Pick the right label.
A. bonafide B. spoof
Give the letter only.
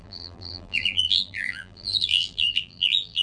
B